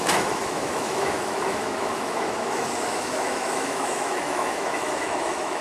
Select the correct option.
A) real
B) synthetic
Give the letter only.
B